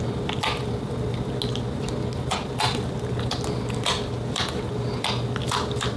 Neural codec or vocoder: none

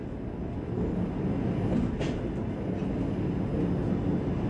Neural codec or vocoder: none